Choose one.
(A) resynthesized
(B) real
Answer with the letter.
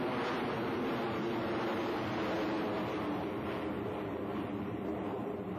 B